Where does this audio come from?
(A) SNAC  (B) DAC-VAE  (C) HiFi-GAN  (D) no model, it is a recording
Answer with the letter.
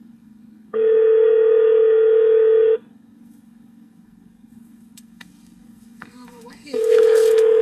A